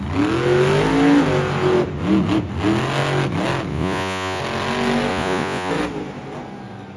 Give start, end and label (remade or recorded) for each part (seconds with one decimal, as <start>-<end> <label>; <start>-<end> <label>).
0.0-3.7 recorded; 3.7-4.4 remade; 4.4-5.1 recorded; 5.1-5.7 remade; 5.7-7.0 recorded